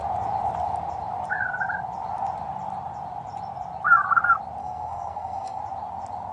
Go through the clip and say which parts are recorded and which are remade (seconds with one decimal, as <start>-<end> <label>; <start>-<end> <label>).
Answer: 0.0-4.6 recorded; 4.6-5.6 remade; 5.6-6.3 recorded